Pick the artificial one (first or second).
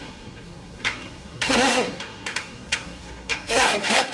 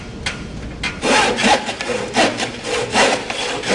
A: first